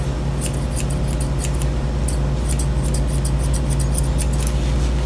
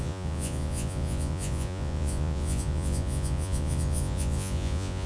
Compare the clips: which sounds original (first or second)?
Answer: first